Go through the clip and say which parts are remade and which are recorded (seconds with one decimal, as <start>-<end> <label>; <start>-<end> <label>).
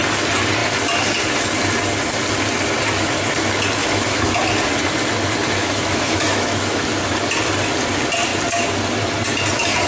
0.0-3.8 recorded; 3.8-4.4 remade; 4.4-5.6 recorded; 5.6-6.8 remade; 6.8-9.9 recorded